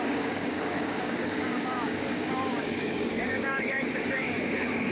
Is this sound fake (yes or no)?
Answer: yes